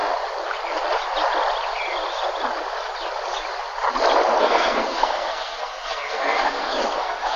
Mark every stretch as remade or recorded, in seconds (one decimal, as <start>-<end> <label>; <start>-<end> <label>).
0.0-4.4 recorded; 4.4-7.4 remade